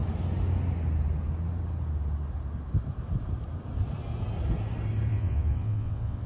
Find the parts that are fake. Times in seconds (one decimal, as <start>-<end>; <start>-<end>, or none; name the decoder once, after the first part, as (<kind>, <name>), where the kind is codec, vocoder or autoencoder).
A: 5.1-6.3 (vocoder, WaveNeXt)